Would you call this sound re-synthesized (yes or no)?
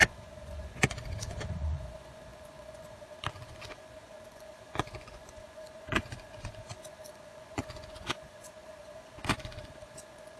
yes